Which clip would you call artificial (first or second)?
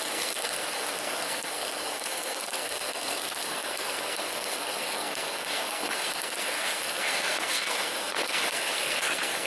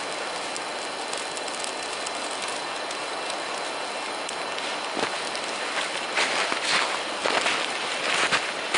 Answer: first